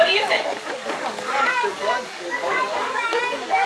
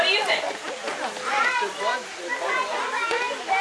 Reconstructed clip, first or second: first